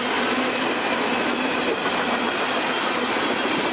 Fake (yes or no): no